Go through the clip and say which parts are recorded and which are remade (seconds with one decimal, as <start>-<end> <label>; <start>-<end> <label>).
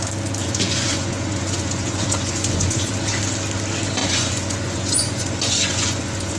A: 0.0-0.4 recorded; 0.4-2.9 remade; 2.9-4.0 recorded; 4.0-6.4 remade